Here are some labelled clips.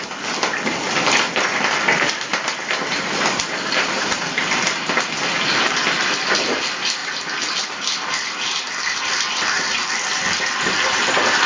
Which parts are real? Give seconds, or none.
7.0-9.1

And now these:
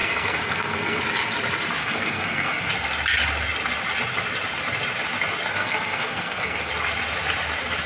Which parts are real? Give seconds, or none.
1.0-1.8; 2.7-5.5; 6.7-7.9

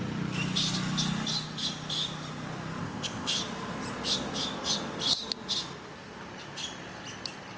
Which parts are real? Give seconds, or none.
0.0-2.8; 3.4-7.6

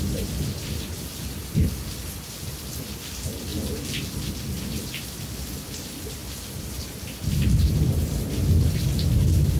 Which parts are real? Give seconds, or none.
3.5-4.3

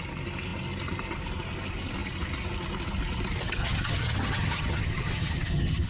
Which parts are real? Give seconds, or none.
0.0-3.6

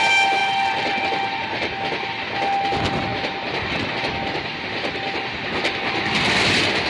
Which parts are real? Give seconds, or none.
0.0-6.9

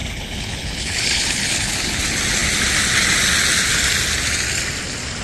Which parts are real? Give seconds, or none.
2.0-5.2